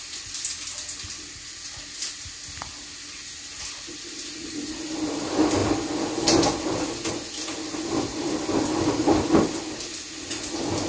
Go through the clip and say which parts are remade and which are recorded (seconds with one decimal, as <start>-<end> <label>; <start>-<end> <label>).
0.0-10.9 recorded